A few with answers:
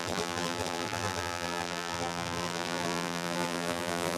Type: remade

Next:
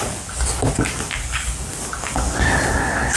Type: recorded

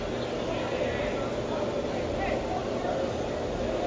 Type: recorded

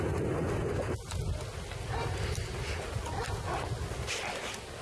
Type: recorded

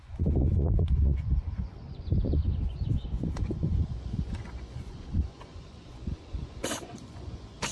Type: remade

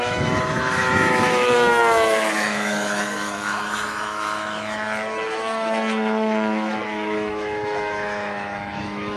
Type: remade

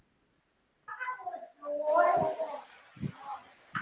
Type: recorded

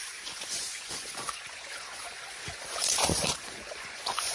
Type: remade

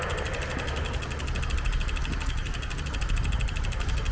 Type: recorded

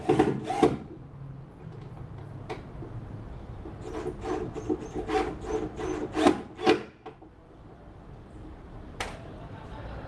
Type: recorded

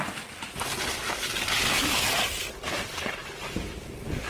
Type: recorded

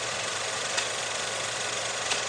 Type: remade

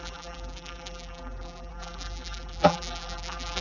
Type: remade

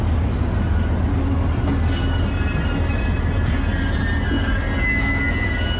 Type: recorded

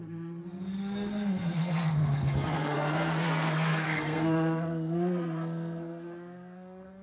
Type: remade